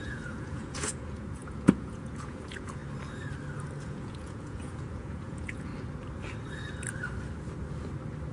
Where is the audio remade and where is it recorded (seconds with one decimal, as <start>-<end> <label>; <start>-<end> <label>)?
0.0-2.8 remade; 2.8-3.8 recorded; 3.8-5.7 remade; 5.7-8.3 recorded